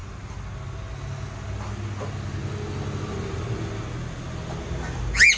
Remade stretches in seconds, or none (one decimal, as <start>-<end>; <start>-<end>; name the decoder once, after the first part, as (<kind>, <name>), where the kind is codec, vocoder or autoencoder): none